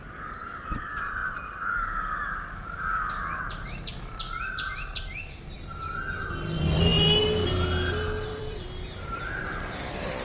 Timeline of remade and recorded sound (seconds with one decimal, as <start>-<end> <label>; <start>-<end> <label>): 0.0-8.3 recorded; 8.3-9.2 remade; 9.2-10.2 recorded